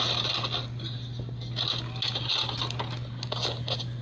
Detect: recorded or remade recorded